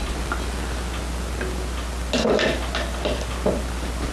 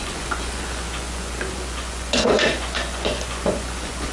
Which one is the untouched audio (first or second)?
first